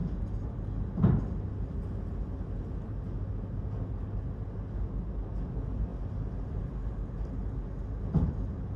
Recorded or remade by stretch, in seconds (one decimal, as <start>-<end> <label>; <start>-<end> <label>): 0.0-8.8 recorded